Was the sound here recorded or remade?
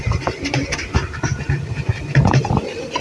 remade